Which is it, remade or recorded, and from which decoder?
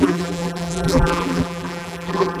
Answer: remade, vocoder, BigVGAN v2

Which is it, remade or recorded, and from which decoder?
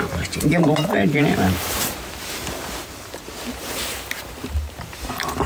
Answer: remade, vocoder, BigVGAN v2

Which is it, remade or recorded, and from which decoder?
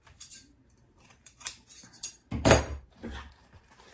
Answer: remade, vocoder, BigVGAN v2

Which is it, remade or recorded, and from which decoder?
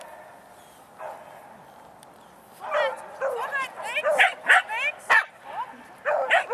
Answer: recorded